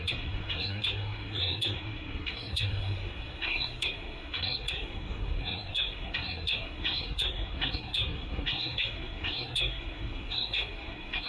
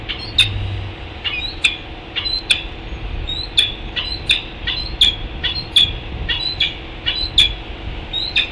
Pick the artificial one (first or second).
first